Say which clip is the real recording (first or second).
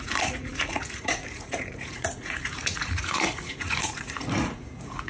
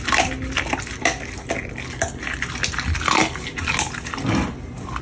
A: second